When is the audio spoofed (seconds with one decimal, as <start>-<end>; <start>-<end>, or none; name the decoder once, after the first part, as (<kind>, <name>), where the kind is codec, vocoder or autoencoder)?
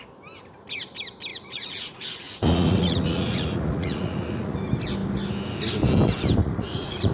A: 1.3-4.6 (vocoder, Vocos); 6.4-7.1